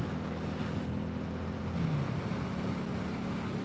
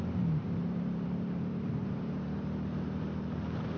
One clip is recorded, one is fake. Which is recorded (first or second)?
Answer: first